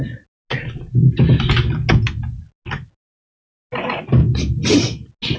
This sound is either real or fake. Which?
real